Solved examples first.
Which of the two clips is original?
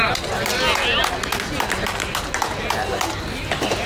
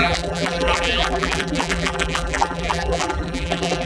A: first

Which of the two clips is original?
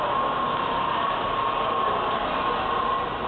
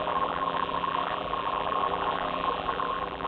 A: first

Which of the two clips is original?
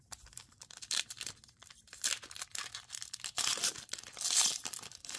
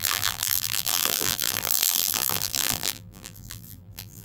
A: first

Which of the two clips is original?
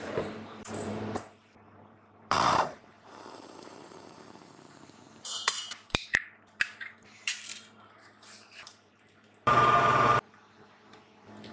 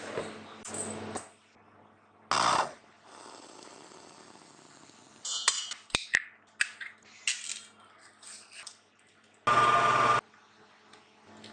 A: second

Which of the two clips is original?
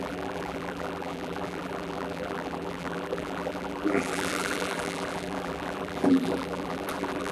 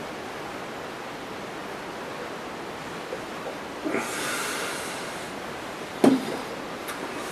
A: second